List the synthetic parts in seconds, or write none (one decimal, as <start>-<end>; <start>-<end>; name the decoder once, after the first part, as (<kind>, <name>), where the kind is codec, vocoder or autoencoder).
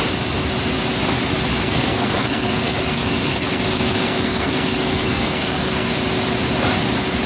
1.5-5.9 (codec, SNAC)